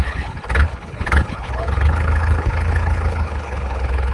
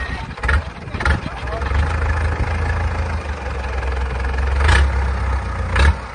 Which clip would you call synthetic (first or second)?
first